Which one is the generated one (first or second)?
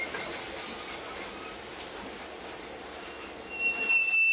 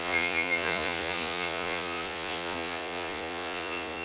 second